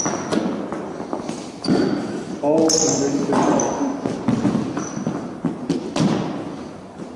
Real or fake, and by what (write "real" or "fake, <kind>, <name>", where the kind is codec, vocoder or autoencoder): real